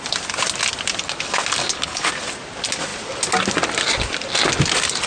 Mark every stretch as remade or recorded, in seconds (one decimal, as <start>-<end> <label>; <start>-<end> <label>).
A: 0.0-1.6 recorded; 1.6-2.1 remade; 2.1-5.1 recorded